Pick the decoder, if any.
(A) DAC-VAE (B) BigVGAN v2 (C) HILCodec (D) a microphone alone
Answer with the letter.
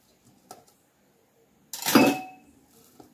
D